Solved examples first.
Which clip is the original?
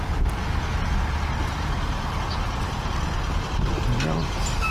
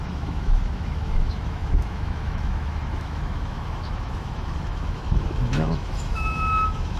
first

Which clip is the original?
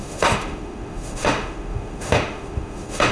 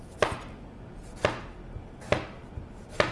second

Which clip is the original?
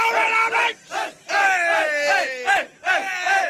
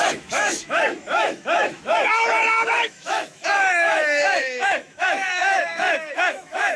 first